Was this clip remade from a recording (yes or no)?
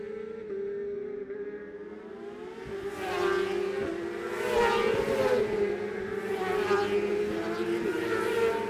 no